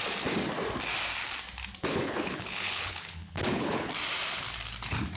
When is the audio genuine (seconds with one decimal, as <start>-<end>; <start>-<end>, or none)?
0.0-1.9; 3.9-5.2